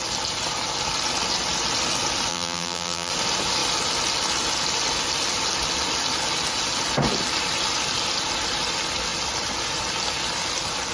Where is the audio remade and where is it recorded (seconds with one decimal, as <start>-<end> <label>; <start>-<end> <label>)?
0.0-2.3 recorded; 2.3-3.1 remade; 3.1-10.9 recorded